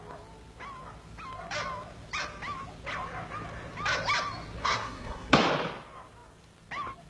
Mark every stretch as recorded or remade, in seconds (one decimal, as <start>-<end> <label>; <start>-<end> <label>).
0.0-4.6 recorded; 4.6-5.4 remade; 5.4-7.1 recorded